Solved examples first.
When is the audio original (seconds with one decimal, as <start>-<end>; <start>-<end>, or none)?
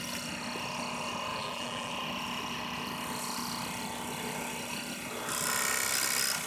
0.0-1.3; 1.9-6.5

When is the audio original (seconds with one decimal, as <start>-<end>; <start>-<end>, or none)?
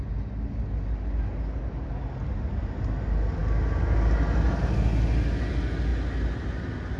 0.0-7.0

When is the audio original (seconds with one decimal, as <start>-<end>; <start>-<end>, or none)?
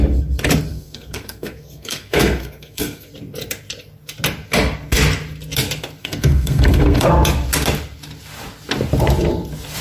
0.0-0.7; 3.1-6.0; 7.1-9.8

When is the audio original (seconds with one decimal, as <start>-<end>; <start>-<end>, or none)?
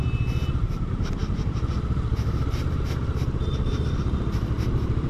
0.0-5.1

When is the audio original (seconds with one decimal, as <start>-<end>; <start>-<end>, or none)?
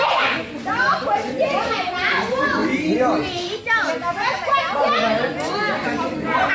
0.0-0.9; 1.9-6.5